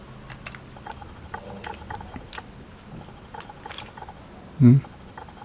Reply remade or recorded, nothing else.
recorded